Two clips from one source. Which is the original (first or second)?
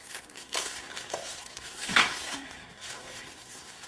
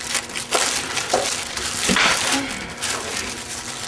second